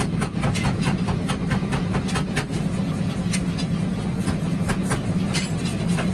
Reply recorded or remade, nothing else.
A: recorded